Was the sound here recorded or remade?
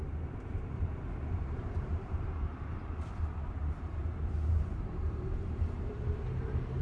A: remade